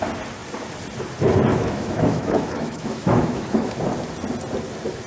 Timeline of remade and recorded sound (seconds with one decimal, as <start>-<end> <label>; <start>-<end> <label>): 0.0-1.5 recorded; 1.5-3.8 remade; 3.8-5.1 recorded